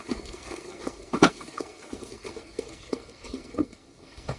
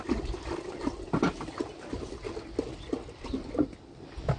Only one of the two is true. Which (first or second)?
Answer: second